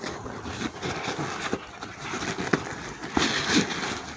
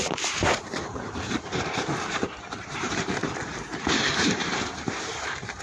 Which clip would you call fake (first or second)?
second